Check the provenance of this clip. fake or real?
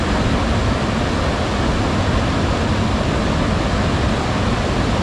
real